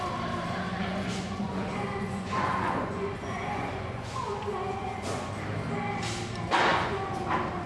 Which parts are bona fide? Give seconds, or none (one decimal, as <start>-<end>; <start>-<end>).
0.0-0.7; 5.3-6.7; 7.3-7.7